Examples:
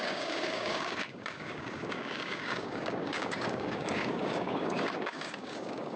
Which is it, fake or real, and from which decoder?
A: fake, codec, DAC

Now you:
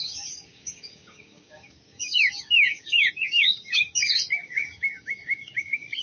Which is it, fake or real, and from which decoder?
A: fake, codec, DAC